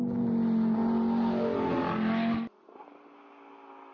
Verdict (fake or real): real